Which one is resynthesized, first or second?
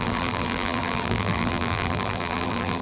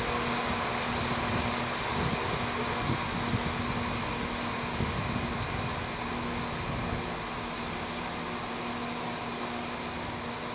first